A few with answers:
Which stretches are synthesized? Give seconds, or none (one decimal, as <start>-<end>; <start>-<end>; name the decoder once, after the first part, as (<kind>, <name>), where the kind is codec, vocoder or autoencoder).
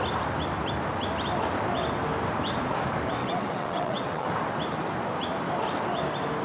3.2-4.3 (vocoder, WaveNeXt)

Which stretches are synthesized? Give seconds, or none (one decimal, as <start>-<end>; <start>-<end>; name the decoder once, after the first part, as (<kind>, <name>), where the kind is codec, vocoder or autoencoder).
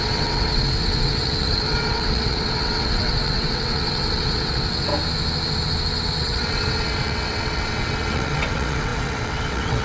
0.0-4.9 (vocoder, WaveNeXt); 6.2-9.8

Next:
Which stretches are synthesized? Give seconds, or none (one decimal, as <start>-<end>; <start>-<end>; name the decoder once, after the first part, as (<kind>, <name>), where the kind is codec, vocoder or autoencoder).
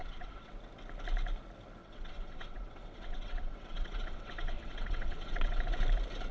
0.0-0.5 (vocoder, WaveNeXt); 1.8-5.6